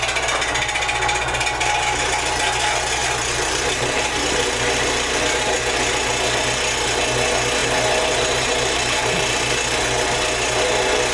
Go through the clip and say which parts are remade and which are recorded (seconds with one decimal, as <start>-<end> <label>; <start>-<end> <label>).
0.0-3.0 recorded; 3.0-5.2 remade; 5.2-7.6 recorded; 7.6-9.5 remade; 9.5-11.1 recorded